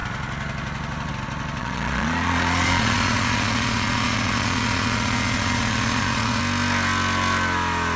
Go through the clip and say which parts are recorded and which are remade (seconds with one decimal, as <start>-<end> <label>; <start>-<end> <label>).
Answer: 0.0-1.6 recorded; 1.6-6.4 remade; 6.4-8.0 recorded